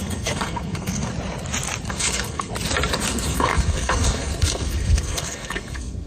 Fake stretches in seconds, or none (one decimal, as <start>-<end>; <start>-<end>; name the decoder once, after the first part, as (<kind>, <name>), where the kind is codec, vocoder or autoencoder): 0.0-1.1 (codec, SNAC); 1.9-2.5; 3.1-6.1